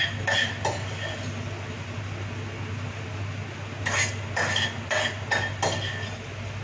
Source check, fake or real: real